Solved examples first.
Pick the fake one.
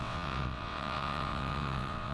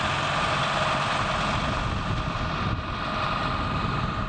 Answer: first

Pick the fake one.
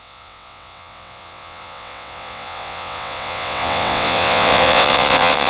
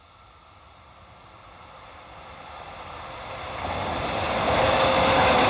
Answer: first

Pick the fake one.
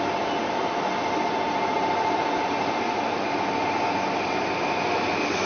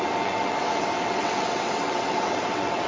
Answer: second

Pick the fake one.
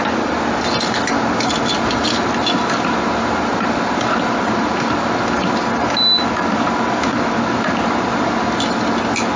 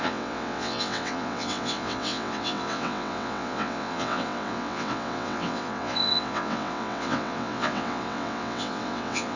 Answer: second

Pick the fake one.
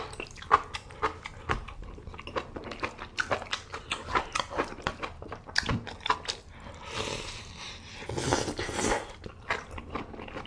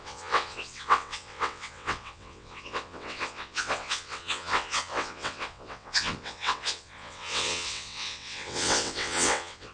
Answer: second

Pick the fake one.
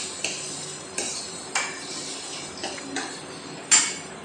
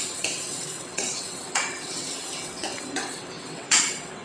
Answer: second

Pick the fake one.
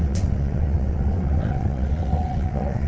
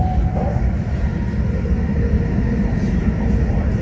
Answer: first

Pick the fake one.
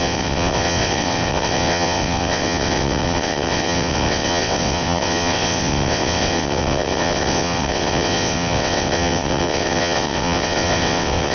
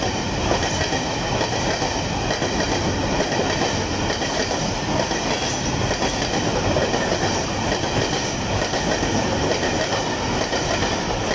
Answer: first